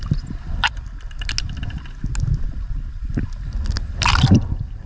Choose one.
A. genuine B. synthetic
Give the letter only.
A